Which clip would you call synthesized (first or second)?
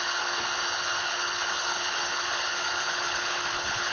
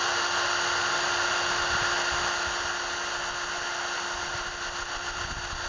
first